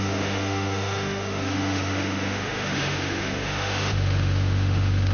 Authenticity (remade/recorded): remade